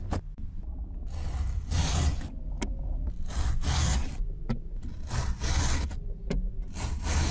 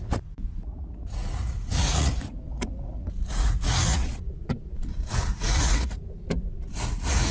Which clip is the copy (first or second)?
second